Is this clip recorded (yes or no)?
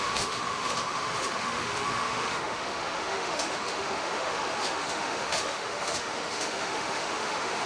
no